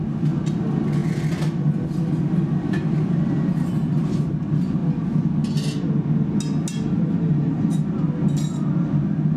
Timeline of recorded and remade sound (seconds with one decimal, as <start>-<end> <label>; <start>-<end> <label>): 0.0-9.4 recorded